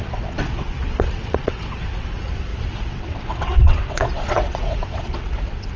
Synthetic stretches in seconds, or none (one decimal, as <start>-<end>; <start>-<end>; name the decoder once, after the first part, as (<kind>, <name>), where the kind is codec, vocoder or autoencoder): 0.0-5.8 (vocoder, WaveNeXt)